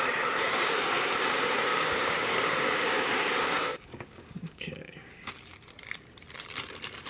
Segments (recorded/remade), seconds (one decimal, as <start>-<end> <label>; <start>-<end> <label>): 0.0-1.7 recorded; 1.7-3.1 remade; 3.1-3.7 recorded; 3.7-5.3 remade; 5.3-7.1 recorded